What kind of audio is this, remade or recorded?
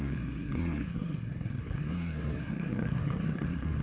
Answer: remade